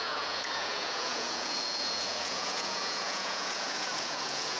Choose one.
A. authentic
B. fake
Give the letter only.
B